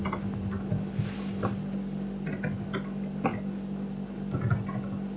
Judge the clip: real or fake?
real